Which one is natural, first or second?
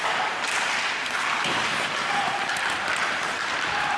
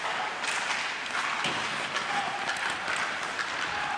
second